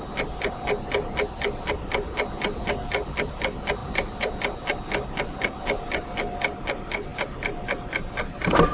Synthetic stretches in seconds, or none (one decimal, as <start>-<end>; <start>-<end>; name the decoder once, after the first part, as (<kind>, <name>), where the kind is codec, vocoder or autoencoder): 3.8-4.3 (vocoder, BigVGAN v2)